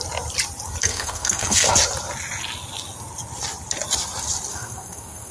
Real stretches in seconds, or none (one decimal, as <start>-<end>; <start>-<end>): 0.0-0.8; 1.7-4.5

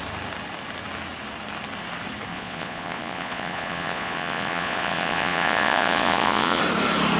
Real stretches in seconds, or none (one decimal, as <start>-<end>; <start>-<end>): 0.0-2.3; 6.6-7.2

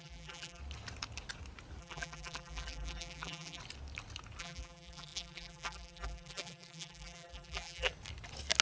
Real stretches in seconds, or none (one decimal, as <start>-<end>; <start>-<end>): 0.6-1.8; 3.6-4.4; 7.9-8.6

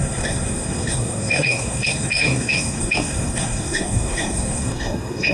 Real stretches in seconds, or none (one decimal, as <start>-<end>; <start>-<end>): none

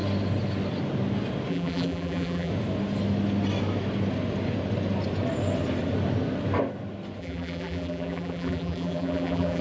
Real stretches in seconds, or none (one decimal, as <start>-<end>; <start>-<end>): 0.0-1.5; 2.5-7.2

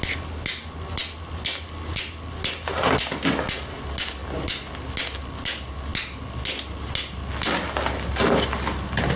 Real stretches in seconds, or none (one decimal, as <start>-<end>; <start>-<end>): 0.0-9.2